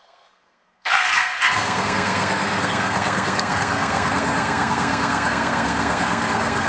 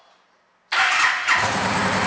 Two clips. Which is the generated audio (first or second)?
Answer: first